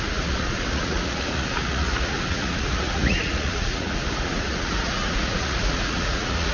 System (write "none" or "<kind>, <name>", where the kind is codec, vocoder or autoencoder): vocoder, Vocos